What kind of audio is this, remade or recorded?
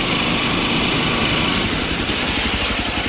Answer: recorded